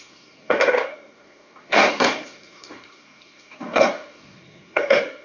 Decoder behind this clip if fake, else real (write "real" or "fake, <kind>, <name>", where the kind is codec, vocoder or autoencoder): fake, codec, SNAC